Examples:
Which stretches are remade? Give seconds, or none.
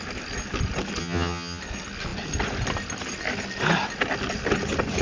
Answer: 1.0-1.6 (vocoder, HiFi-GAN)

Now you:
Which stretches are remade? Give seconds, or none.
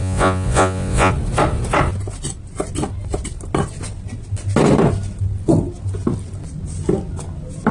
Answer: 0.0-1.1 (vocoder, Vocos)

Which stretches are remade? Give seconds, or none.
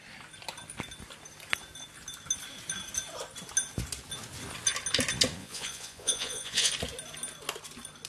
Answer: 5.4-6.7 (vocoder, Vocos)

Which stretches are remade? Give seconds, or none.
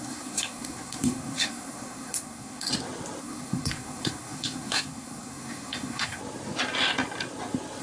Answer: 0.0-2.7 (codec, SNAC); 3.2-6.2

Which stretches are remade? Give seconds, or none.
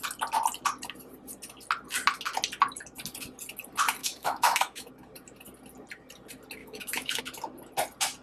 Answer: 4.0-4.9 (autoencoder, DAC-VAE); 6.6-7.2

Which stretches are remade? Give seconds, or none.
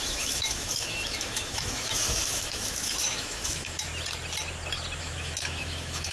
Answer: 0.0-3.9 (autoencoder, DAC-VAE); 5.0-6.1